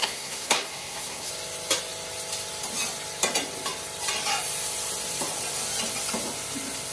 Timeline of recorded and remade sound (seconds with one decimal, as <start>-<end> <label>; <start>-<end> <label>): 0.0-1.3 remade; 1.3-6.9 recorded